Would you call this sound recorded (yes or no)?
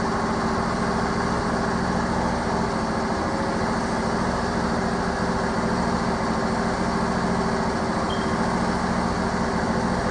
yes